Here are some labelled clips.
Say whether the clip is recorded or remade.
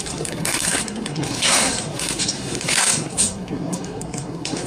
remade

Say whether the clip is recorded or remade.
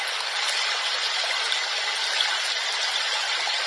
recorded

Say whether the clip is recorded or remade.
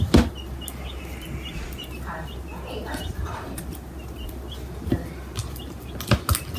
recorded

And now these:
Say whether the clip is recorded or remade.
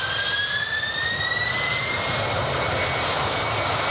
recorded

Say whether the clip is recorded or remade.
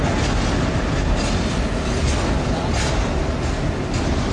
recorded